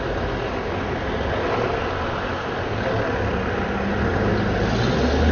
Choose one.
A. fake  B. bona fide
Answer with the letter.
B